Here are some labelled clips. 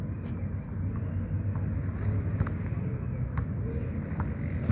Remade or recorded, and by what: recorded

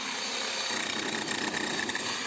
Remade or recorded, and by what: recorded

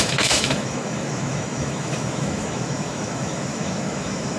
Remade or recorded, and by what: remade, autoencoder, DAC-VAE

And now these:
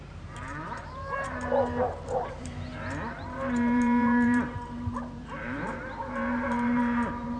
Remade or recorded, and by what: remade, vocoder, BigVGAN v2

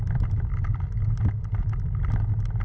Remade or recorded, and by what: recorded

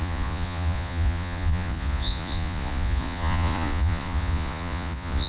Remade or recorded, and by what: remade, vocoder, Vocos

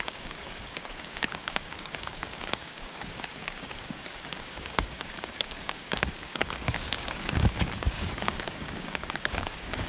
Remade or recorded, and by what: remade, codec, DAC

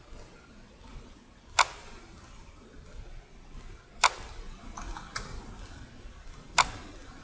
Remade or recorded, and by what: recorded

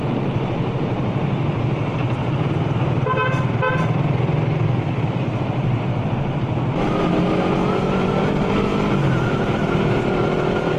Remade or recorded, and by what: recorded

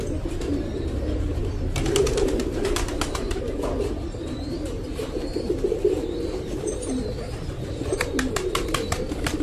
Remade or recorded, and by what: remade, vocoder, BigVGAN v2